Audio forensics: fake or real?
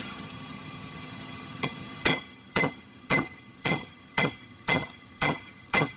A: fake